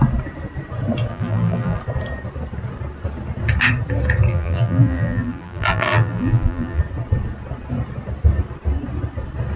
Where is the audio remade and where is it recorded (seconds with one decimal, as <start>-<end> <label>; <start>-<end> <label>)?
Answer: 0.0-1.1 recorded; 1.1-1.8 remade; 1.8-4.3 recorded; 4.3-6.8 remade; 6.8-9.6 recorded